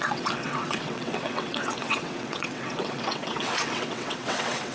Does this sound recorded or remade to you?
remade